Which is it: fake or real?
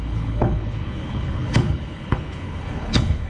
fake